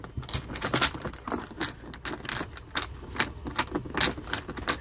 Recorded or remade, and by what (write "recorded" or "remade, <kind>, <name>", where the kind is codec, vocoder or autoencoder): recorded